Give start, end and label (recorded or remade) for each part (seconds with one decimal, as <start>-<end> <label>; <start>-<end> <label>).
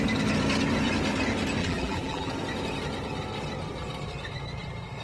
0.0-1.6 recorded; 1.6-2.3 remade; 2.3-5.0 recorded